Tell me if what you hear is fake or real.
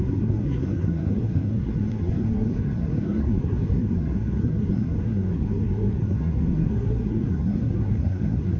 fake